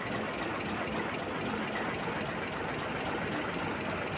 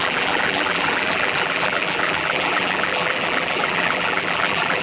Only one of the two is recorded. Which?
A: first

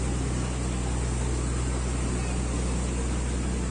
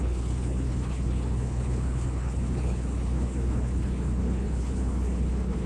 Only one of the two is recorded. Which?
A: first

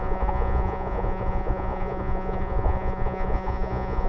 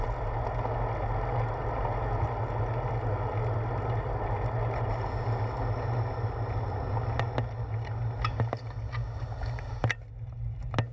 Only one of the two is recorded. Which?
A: second